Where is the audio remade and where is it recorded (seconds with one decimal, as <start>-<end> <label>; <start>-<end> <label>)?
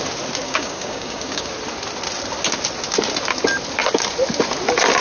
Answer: 0.0-0.4 recorded; 0.4-1.5 remade; 1.5-5.0 recorded